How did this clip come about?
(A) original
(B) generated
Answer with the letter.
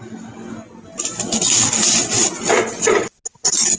A